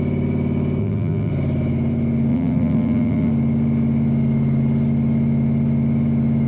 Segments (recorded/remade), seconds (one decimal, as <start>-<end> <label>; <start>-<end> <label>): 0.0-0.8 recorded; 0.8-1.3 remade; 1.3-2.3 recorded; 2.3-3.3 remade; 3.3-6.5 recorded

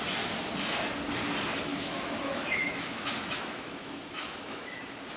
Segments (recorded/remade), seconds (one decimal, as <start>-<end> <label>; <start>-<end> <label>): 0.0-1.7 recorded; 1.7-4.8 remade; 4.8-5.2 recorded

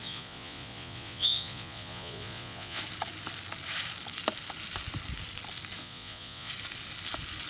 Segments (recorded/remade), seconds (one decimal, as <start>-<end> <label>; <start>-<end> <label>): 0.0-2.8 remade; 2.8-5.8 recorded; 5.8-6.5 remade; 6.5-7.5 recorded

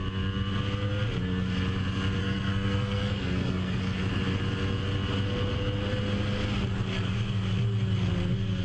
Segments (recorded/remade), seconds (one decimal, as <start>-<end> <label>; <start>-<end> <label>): 0.0-2.2 recorded; 2.2-3.8 remade; 3.8-8.6 recorded

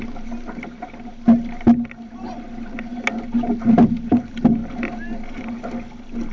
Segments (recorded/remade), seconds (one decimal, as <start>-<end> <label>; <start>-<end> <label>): 0.0-6.3 recorded

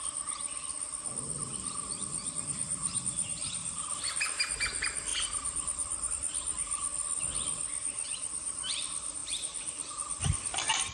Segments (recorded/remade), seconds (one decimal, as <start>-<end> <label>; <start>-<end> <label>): 0.0-2.8 recorded; 2.8-4.4 remade; 4.4-5.1 recorded; 5.1-6.1 remade; 6.1-9.2 recorded; 9.2-9.9 remade; 9.9-10.9 recorded

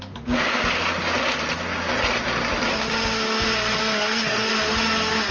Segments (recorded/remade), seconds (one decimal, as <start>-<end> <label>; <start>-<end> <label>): 0.0-3.8 recorded; 3.8-4.5 remade; 4.5-5.3 recorded